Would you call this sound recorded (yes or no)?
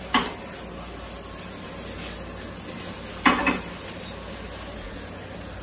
yes